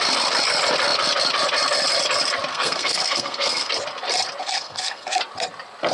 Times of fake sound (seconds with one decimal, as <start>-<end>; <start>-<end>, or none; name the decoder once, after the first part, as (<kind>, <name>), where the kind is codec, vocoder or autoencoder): 2.5-3.7 (codec, SNAC); 4.4-5.2

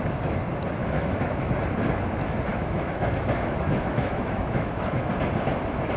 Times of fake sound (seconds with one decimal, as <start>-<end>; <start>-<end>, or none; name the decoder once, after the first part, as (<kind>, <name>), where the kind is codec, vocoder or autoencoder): 0.8-1.5 (autoencoder, DAC-VAE); 2.5-5.1

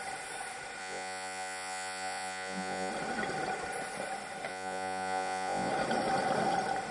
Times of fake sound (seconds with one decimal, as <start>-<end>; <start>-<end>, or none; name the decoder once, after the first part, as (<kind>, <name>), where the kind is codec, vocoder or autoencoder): 0.8-2.9 (vocoder, Vocos); 4.5-5.7

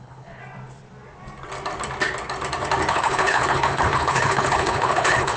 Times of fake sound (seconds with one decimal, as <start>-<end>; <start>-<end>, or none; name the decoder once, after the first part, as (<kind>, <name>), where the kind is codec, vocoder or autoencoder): 0.0-0.4 (codec, HILCodec); 2.9-5.4

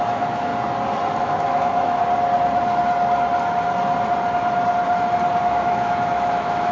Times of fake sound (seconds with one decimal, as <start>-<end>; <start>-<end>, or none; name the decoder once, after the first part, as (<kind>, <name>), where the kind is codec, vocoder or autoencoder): 0.0-0.5 (autoencoder, DAC-VAE); 1.2-2.0; 5.4-6.7

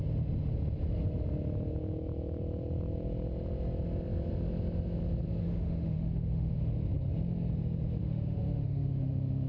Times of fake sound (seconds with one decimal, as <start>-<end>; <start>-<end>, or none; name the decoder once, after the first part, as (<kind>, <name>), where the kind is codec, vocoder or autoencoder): 5.4-6.6 (autoencoder, DAC-VAE); 8.0-9.5